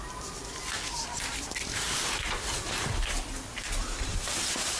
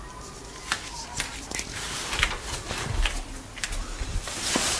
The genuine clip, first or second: second